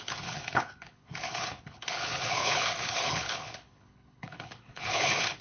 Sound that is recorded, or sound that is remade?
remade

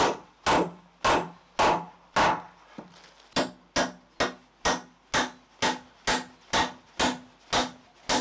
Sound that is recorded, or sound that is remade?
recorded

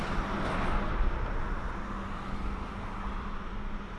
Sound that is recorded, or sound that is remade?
recorded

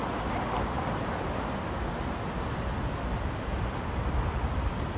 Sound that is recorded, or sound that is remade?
recorded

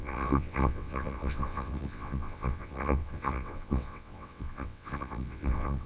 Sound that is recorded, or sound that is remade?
remade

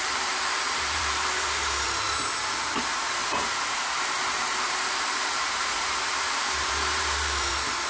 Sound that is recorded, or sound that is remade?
remade